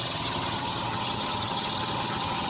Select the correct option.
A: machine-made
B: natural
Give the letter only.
A